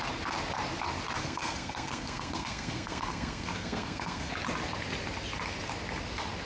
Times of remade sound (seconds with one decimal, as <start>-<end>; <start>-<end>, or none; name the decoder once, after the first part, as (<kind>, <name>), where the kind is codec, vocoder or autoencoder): 1.2-4.3 (codec, SNAC)